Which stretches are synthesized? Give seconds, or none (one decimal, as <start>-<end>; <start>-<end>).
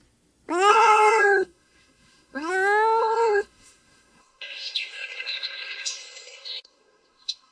0.7-2.5; 3.0-7.5